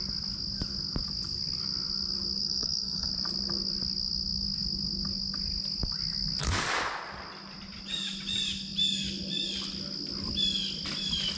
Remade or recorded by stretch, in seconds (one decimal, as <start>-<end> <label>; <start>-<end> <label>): 0.0-2.4 recorded; 2.4-3.1 remade; 3.1-11.4 recorded